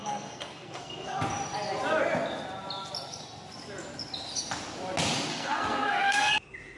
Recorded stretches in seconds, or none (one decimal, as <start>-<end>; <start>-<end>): 1.2-5.3; 6.3-6.8